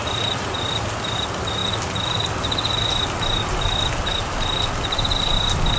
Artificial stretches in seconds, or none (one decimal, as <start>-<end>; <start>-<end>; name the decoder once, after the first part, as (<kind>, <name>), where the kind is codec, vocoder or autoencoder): none